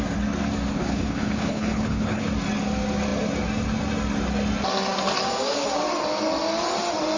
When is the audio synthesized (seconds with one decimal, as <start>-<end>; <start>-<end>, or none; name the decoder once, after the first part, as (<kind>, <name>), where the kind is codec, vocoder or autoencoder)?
0.7-2.2 (codec, HILCodec)